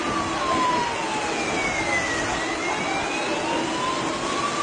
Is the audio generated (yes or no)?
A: no